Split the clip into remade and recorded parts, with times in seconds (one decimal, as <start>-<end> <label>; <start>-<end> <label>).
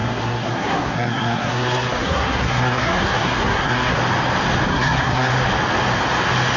0.0-4.0 remade; 4.0-4.7 recorded; 4.7-5.3 remade; 5.3-6.6 recorded